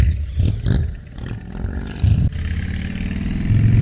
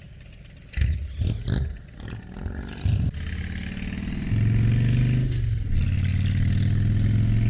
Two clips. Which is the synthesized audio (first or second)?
first